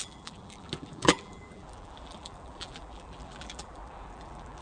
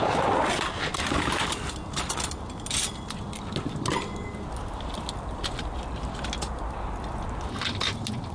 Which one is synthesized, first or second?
first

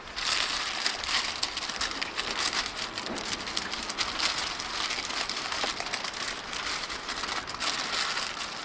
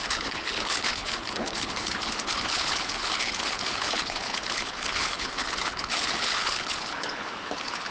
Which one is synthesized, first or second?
second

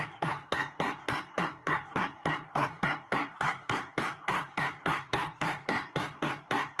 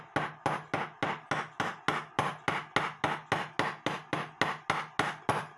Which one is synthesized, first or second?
first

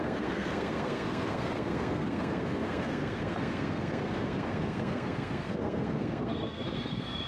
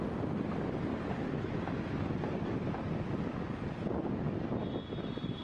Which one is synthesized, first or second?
first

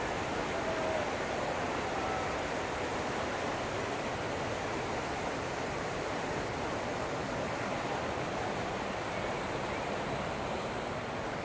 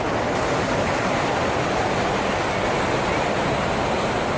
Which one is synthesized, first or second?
first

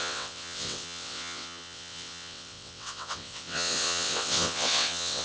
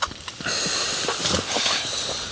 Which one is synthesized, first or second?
first